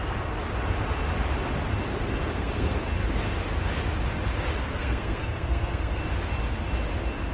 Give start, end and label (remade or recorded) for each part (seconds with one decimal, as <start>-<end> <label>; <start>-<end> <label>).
0.0-2.2 recorded; 2.2-2.8 remade; 2.8-4.6 recorded; 4.6-6.0 remade; 6.0-7.3 recorded